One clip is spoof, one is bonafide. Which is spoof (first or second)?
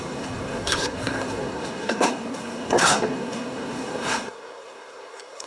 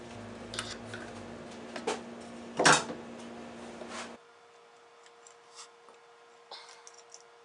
first